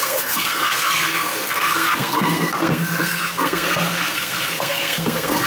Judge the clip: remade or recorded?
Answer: remade